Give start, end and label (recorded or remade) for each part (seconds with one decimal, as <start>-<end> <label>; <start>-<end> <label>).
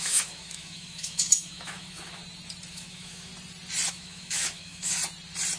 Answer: 0.0-2.2 remade; 2.2-2.7 recorded; 2.7-3.3 remade; 3.3-3.9 recorded; 3.9-5.0 remade; 5.0-5.6 recorded